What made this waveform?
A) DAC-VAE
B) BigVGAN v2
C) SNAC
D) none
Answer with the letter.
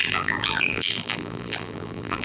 B